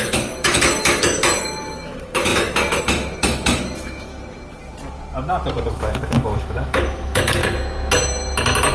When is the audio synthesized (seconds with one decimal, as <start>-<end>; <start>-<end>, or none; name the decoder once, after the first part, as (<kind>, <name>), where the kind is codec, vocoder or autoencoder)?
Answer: 0.0-4.1 (autoencoder, DAC-VAE); 5.7-7.4